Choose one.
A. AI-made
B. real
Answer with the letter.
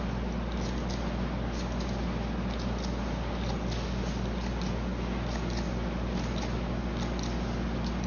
B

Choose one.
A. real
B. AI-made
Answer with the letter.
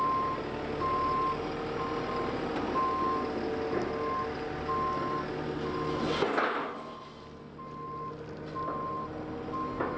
A